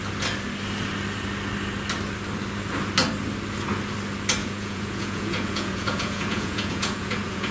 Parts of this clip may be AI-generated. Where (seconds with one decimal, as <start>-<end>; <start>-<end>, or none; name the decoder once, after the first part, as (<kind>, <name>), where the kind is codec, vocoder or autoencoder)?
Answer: 4.4-7.5 (vocoder, Vocos)